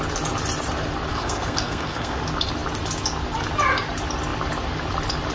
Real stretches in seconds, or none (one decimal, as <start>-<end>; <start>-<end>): 0.0-1.1; 2.2-5.3